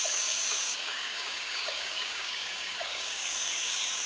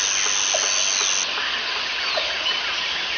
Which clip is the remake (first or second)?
first